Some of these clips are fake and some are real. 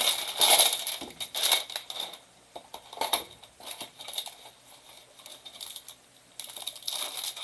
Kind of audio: real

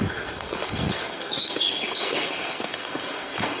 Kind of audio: fake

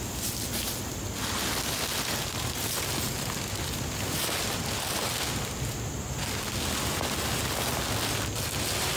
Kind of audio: real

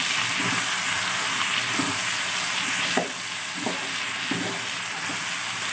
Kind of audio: real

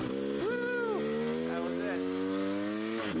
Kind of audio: real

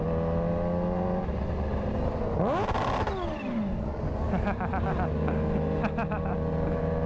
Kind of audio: real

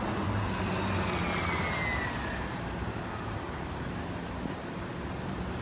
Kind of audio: real